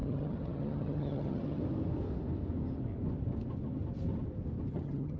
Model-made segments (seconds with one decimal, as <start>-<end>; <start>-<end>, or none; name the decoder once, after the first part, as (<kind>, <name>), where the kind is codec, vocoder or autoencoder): 0.0-1.6 (vocoder, HiFi-GAN); 4.7-5.2